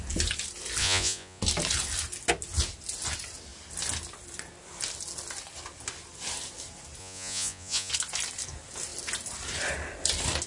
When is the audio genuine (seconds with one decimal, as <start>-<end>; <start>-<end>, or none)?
0.0-0.8; 1.4-7.0; 7.9-10.5